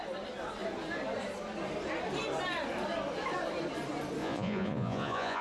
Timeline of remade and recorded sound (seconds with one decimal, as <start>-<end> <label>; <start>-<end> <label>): 0.0-4.2 recorded; 4.2-5.4 remade